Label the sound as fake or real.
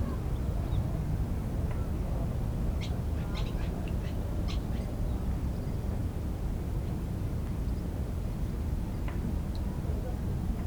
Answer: real